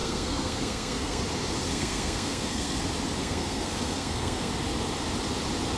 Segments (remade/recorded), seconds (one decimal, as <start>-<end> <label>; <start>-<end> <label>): 0.0-1.2 remade; 1.2-1.7 recorded; 1.7-2.8 remade; 2.8-3.2 recorded; 3.2-4.5 remade; 4.5-5.8 recorded